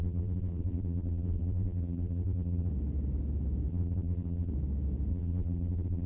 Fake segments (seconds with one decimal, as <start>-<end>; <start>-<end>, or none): 0.0-2.7; 3.7-4.5; 5.1-6.1